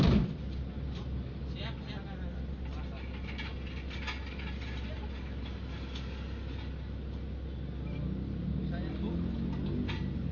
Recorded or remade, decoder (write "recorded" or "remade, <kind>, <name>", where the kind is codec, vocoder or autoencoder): recorded